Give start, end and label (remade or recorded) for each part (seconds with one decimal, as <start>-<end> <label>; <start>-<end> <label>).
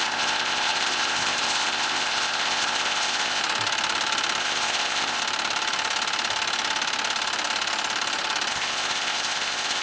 0.0-3.4 remade; 3.4-4.4 recorded; 4.4-5.2 remade; 5.2-8.5 recorded; 8.5-9.8 remade